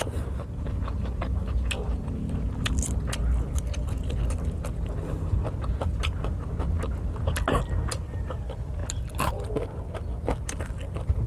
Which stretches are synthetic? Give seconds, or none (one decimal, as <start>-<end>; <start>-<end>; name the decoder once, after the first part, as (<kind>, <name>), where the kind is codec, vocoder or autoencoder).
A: none